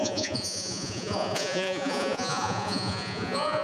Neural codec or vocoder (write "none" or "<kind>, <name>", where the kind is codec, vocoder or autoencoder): vocoder, Vocos